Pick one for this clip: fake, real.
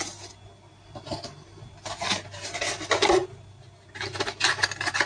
real